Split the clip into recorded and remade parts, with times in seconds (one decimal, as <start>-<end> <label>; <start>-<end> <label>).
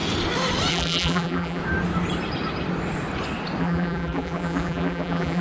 0.0-0.7 recorded; 0.7-1.6 remade; 1.6-3.6 recorded; 3.6-5.4 remade